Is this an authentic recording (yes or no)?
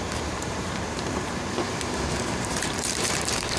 no